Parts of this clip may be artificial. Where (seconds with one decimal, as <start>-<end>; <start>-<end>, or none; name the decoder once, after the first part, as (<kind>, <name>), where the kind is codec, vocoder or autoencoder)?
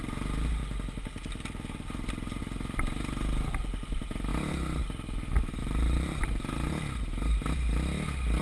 5.6-6.7 (vocoder, BigVGAN v2)